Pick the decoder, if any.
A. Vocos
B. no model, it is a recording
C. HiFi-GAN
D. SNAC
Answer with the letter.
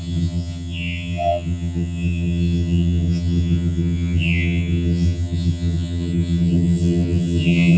C